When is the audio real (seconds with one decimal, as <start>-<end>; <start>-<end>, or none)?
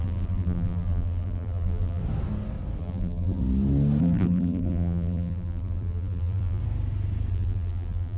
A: 2.0-2.8; 3.4-4.0; 6.6-7.3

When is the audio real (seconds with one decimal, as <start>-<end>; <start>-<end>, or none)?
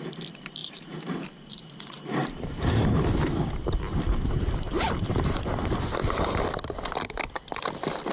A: 0.0-0.6; 5.5-8.1